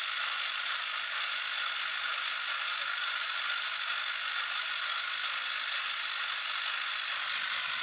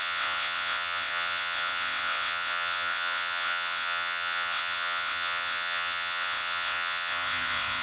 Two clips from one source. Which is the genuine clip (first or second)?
first